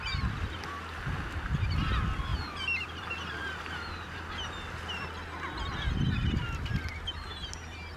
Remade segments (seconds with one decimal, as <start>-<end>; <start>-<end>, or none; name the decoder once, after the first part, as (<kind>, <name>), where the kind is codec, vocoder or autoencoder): 2.3-4.2 (vocoder, BigVGAN v2); 6.9-8.0